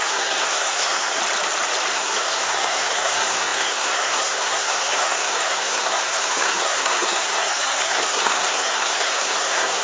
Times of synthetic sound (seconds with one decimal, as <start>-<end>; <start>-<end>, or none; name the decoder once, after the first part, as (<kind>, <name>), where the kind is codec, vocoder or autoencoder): 0.0-1.2 (codec, SNAC); 1.9-9.8